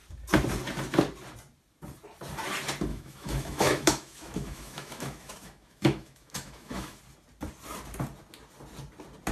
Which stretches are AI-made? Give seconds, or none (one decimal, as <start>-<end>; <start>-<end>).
2.9-7.0